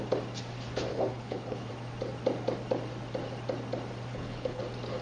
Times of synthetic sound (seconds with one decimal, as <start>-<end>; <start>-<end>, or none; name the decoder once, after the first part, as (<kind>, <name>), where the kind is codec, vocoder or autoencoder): 0.9-1.7 (codec, HILCodec); 4.1-4.6